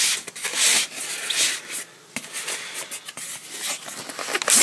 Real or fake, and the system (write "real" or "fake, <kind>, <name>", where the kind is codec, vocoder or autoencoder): real